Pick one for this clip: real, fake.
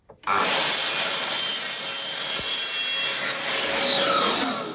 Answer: real